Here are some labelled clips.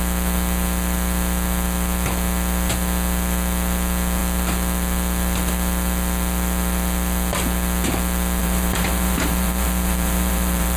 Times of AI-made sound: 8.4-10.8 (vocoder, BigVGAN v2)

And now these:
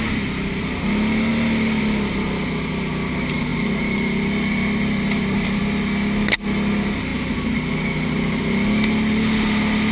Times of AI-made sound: 3.5-5.6 (vocoder, BigVGAN v2)

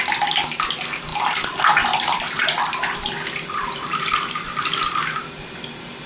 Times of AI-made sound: 1.1-1.6 (vocoder, BigVGAN v2); 2.4-4.8

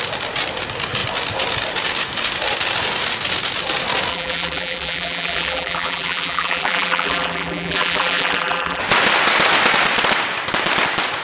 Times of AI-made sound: 4.1-8.8 (vocoder, BigVGAN v2)

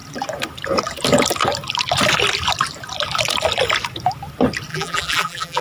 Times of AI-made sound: 4.7-5.6 (vocoder, BigVGAN v2)

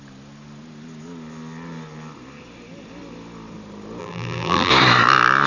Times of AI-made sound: 4.0-4.7 (vocoder, BigVGAN v2)